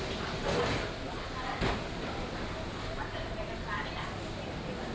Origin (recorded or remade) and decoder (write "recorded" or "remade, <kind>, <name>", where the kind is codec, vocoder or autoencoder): recorded